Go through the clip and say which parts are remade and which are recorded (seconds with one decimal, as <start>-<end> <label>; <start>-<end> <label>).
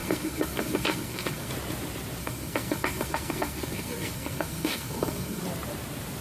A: 0.0-1.5 remade; 1.5-2.2 recorded; 2.2-5.4 remade; 5.4-6.2 recorded